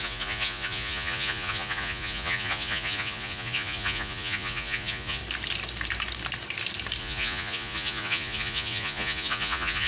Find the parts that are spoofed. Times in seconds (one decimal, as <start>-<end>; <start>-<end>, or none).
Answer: 0.0-5.2; 7.0-9.9